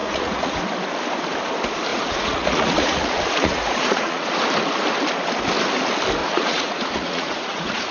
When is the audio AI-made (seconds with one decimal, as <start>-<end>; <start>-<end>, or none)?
0.0-0.6; 1.9-4.4; 6.2-7.9